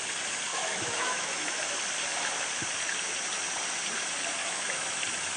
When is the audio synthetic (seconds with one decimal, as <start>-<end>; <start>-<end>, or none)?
0.5-1.6; 4.4-5.0